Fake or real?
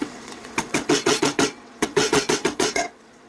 fake